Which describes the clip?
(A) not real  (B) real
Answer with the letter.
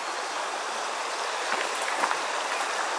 B